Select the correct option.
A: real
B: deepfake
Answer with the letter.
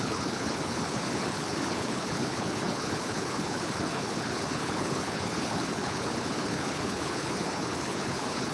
B